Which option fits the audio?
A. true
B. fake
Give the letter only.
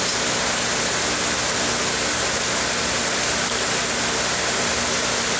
A